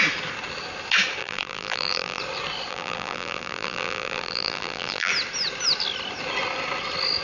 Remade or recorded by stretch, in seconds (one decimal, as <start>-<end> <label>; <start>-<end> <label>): 0.0-1.2 recorded; 1.2-2.2 remade; 2.2-2.7 recorded; 2.7-5.1 remade; 5.1-7.2 recorded